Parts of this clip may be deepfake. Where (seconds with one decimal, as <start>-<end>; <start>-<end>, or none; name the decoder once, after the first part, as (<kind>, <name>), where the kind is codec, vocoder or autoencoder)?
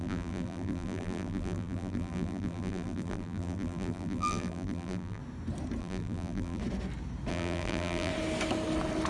0.0-5.2 (vocoder, BigVGAN v2); 5.8-6.6; 7.3-8.1